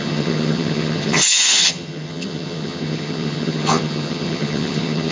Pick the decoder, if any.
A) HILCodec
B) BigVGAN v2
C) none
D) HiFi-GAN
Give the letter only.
D